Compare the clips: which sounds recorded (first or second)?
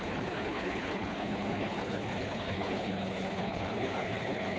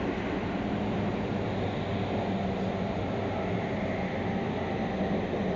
second